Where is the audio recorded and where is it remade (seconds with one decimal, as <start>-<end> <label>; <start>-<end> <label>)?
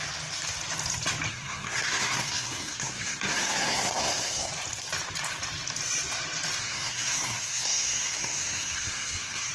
0.0-1.3 recorded; 1.3-4.5 remade; 4.5-6.6 recorded; 6.6-9.5 remade